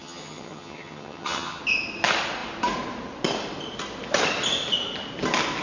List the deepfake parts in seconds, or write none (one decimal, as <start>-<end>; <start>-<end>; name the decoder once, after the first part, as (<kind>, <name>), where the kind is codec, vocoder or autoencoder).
0.0-1.6 (vocoder, HiFi-GAN)